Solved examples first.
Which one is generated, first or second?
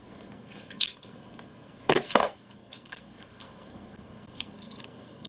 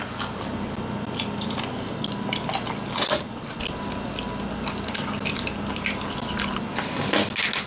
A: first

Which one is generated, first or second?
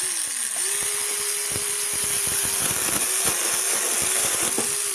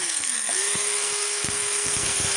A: second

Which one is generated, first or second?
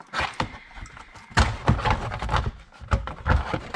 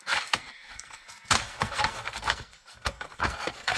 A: second